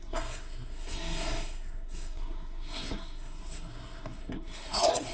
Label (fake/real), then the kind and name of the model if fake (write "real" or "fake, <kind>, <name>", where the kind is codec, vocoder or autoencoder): fake, codec, SNAC